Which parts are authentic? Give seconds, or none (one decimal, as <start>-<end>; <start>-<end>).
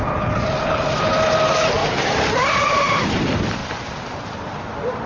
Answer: 0.0-1.8; 3.2-3.6; 4.5-5.1